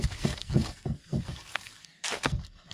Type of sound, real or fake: fake